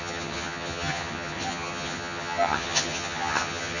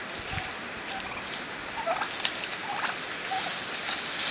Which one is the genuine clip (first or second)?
second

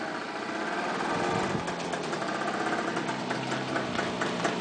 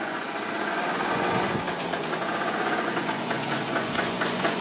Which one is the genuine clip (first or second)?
first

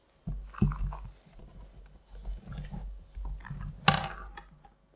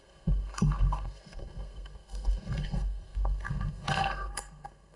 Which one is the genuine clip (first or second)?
first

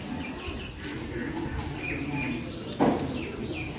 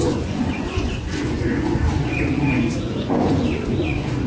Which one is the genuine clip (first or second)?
first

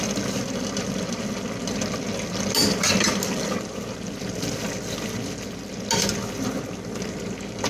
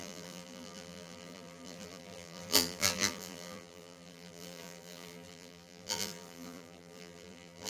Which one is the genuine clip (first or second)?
first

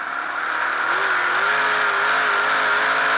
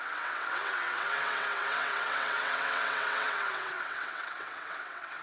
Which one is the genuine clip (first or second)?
first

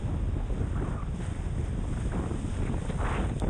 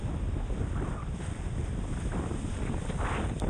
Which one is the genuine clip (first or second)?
first